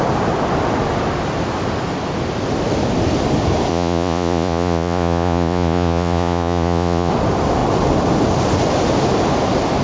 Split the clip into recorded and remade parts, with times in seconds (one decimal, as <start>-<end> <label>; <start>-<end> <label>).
0.0-3.7 recorded; 3.7-7.1 remade; 7.1-9.8 recorded